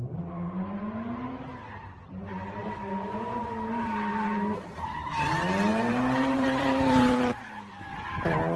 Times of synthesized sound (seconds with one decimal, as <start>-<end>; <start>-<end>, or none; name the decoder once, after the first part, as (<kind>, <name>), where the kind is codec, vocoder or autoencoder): 2.6-5.3 (vocoder, BigVGAN v2); 5.7-7.1